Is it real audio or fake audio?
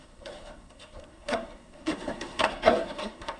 fake